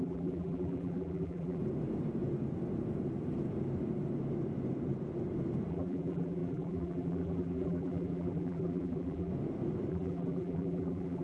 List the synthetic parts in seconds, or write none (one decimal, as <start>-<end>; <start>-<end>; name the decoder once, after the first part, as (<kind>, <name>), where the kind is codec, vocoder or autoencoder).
0.0-1.6 (vocoder, BigVGAN v2); 5.7-9.3; 9.9-11.2